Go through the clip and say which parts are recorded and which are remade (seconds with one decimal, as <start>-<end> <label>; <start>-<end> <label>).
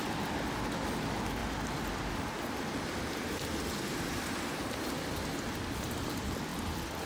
0.0-7.1 recorded